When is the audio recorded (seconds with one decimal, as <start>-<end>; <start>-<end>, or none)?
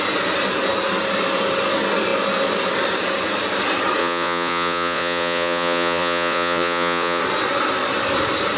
0.0-4.0; 7.2-8.6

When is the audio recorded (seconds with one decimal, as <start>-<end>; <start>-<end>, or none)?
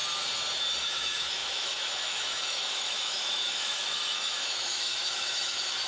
0.0-0.8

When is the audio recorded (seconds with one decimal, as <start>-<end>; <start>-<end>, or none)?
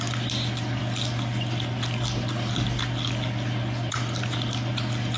0.0-5.2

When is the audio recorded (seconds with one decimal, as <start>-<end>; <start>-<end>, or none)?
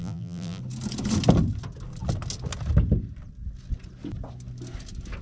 0.6-5.2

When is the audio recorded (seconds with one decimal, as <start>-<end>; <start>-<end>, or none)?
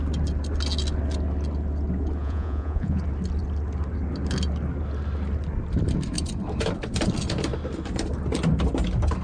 0.0-2.2; 3.0-9.2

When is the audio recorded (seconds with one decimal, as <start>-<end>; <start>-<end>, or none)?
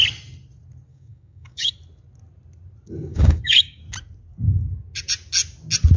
0.0-0.9; 1.7-3.1; 3.8-6.0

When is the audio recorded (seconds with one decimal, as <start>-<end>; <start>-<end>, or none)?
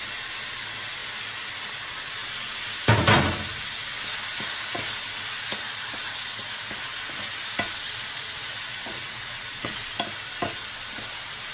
0.0-8.7; 9.8-11.5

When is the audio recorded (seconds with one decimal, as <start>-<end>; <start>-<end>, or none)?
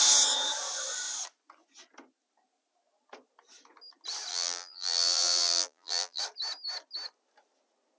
0.0-4.3; 6.2-8.0